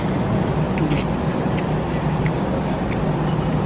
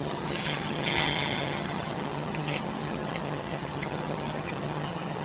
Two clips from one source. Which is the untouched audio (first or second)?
first